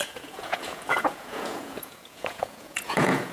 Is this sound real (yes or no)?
no